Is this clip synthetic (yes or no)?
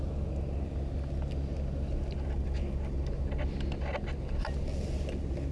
no